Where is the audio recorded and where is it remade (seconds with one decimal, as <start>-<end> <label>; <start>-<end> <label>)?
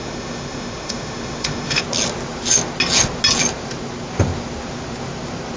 0.0-1.8 remade; 1.8-5.6 recorded